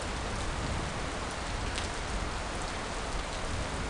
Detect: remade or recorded recorded